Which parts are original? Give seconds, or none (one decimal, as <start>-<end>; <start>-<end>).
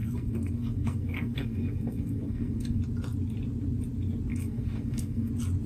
2.8-4.3; 5.3-5.7